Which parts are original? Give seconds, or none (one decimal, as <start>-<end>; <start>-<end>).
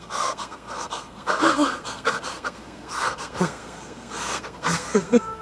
none